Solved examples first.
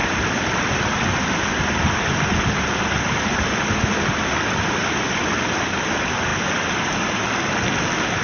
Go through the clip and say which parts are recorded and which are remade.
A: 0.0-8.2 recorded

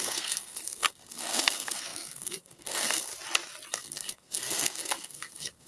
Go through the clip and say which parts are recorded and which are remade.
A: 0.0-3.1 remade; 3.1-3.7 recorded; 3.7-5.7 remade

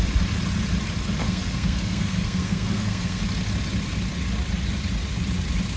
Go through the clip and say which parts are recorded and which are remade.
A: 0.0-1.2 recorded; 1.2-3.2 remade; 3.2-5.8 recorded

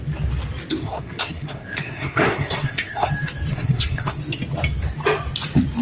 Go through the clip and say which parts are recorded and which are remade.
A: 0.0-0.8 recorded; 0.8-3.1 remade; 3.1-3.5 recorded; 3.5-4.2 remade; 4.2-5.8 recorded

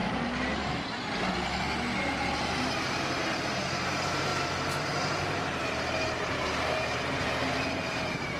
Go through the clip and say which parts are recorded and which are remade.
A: 0.0-2.5 recorded; 2.5-4.3 remade; 4.3-4.8 recorded; 4.8-8.4 remade

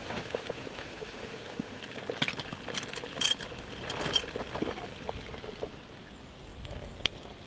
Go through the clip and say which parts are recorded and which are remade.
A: 0.0-1.8 remade; 1.8-7.5 recorded

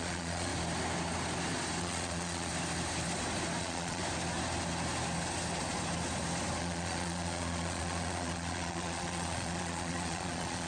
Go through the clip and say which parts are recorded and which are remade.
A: 0.0-0.5 remade; 0.5-1.8 recorded; 1.8-2.5 remade; 2.5-3.6 recorded; 3.6-4.0 remade; 4.0-6.6 recorded; 6.6-10.7 remade